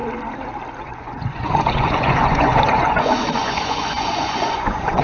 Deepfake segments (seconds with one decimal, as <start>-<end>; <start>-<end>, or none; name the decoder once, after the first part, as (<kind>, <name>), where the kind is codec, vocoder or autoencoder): 0.8-5.0 (vocoder, Vocos)